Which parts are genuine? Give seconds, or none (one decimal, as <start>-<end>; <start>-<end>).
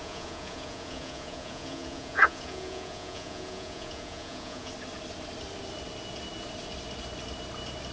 4.7-7.9